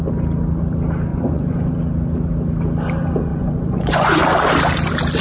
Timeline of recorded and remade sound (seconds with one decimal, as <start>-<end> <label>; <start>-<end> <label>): 0.0-1.1 recorded; 1.1-1.7 remade; 1.7-3.3 recorded; 3.3-4.2 remade; 4.2-5.2 recorded